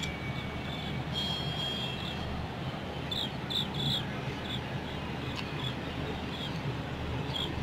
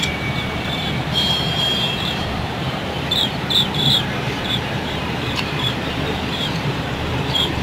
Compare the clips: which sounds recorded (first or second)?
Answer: first